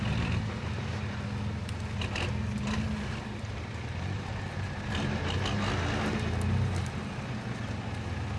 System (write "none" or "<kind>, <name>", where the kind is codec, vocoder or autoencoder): none